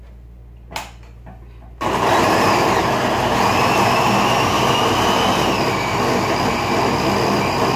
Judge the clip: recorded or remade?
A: recorded